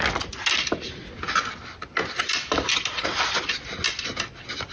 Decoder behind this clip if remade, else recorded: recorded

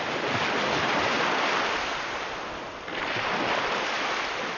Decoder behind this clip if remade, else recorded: recorded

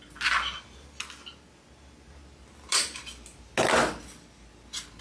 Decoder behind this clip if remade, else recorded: recorded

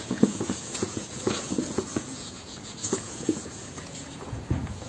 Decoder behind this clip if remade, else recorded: remade, vocoder, Vocos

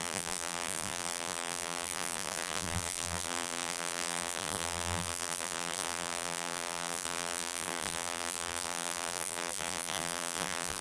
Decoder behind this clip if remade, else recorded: remade, vocoder, BigVGAN v2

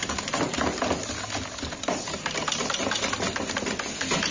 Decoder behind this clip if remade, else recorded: recorded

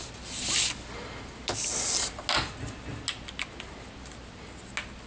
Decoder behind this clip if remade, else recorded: recorded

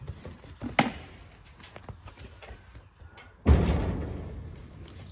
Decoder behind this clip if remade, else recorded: recorded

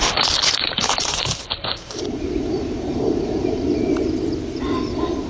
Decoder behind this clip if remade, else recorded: remade, vocoder, BigVGAN v2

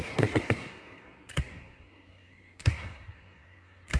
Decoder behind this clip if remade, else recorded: remade, codec, SNAC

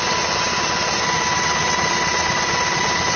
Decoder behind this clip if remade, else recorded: recorded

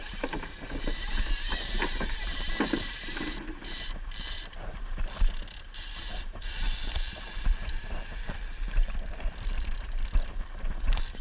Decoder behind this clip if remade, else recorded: remade, vocoder, BigVGAN v2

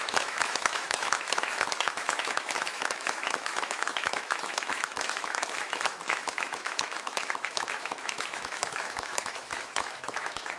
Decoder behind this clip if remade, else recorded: remade, autoencoder, DAC-VAE